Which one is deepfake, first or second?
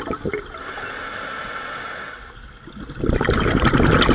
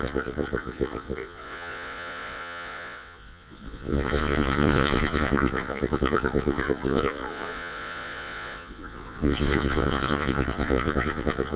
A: second